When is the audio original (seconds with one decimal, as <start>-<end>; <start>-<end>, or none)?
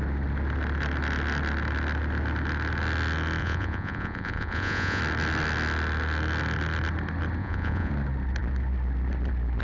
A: 0.0-3.4; 5.0-7.4; 7.9-9.6